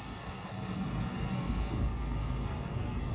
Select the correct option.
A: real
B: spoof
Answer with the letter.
B